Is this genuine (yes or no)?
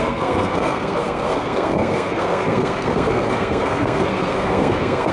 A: no